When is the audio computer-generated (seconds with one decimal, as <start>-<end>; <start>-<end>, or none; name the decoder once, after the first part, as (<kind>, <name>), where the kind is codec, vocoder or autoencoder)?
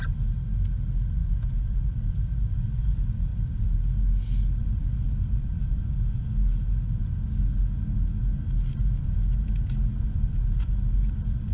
none